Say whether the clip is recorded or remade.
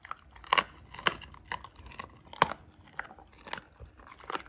recorded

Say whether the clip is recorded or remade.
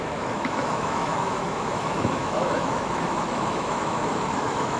remade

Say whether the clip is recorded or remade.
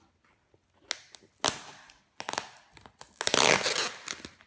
recorded